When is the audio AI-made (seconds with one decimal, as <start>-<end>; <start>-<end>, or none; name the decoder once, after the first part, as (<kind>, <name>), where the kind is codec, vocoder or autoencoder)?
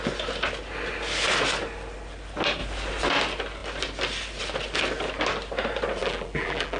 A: 6.0-6.8 (vocoder, BigVGAN v2)